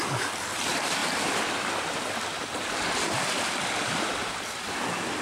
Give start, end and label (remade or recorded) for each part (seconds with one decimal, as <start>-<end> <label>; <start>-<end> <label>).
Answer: 0.0-5.2 recorded

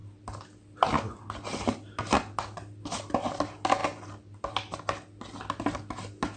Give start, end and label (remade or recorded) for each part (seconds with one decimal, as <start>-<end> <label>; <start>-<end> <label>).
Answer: 0.0-6.4 recorded